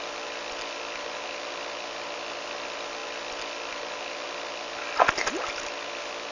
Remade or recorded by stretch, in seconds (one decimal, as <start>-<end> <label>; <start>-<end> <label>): 0.0-6.3 recorded